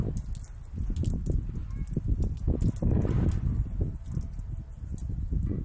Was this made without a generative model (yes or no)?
yes